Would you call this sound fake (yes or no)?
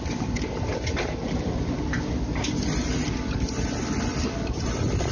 no